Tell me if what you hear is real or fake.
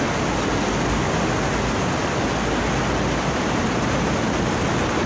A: real